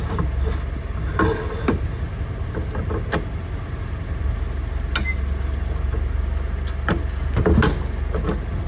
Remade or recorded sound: recorded